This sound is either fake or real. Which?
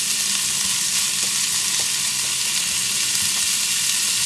real